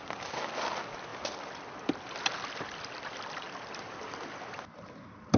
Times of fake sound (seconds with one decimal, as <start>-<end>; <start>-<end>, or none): none